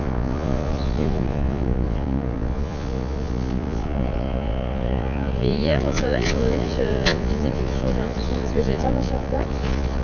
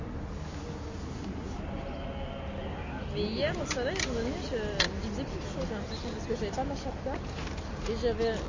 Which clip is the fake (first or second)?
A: first